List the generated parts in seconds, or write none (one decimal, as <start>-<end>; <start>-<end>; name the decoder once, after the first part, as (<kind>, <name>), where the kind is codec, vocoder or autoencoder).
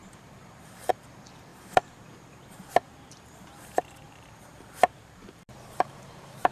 0.0-6.5 (vocoder, BigVGAN v2)